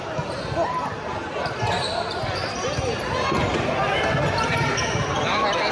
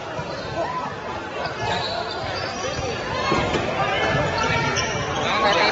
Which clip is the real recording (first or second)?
second